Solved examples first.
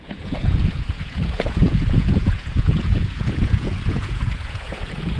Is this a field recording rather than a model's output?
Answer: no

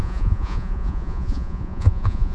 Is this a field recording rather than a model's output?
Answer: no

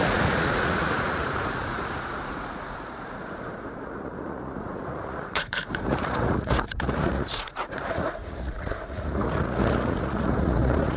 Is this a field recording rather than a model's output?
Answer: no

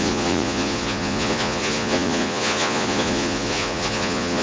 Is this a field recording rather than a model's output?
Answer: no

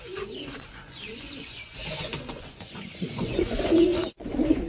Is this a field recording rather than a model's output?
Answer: no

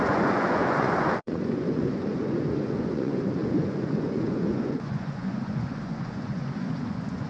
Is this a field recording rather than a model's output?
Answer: no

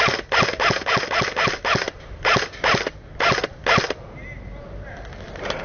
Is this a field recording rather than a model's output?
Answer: yes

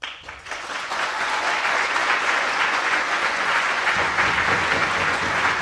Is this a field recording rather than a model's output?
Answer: no